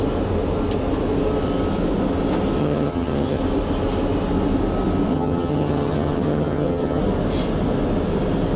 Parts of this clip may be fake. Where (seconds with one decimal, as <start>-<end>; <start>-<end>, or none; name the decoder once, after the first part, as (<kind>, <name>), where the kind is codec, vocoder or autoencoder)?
2.6-3.4 (vocoder, HiFi-GAN); 5.1-7.0